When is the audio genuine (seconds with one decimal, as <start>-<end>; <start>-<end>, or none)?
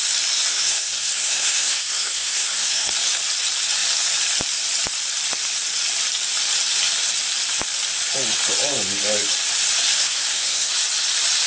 0.0-0.5; 2.9-9.9; 10.7-11.5